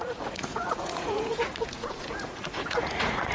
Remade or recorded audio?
remade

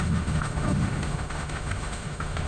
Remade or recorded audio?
remade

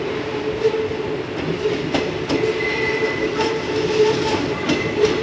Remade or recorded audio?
recorded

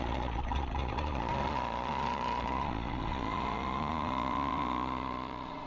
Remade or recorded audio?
remade